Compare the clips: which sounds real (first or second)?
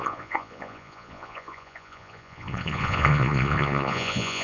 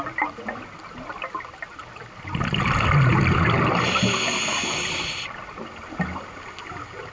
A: second